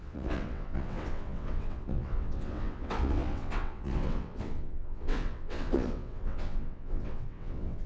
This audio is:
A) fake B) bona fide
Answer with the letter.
A